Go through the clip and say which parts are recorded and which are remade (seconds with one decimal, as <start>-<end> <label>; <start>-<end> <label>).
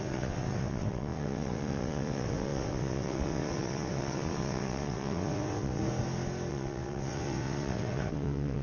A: 0.0-5.8 remade; 5.8-6.5 recorded; 6.5-8.6 remade